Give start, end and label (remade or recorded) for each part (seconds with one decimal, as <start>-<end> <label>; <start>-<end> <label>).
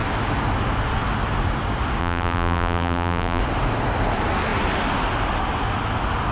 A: 0.0-2.0 recorded; 2.0-3.4 remade; 3.4-6.3 recorded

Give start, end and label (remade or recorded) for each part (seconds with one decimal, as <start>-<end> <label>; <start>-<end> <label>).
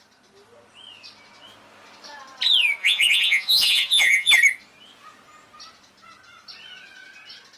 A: 0.0-2.8 recorded; 2.8-4.3 remade; 4.3-7.6 recorded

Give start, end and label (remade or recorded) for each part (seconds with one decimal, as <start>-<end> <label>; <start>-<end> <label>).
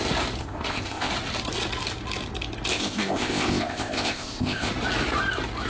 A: 0.0-0.4 recorded; 0.4-1.1 remade; 1.1-2.7 recorded; 2.7-4.7 remade; 4.7-5.7 recorded